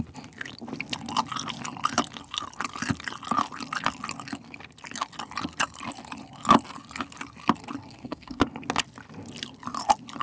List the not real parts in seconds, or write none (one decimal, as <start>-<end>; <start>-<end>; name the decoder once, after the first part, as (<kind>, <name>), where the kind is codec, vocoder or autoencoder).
7.8-8.4 (codec, SNAC)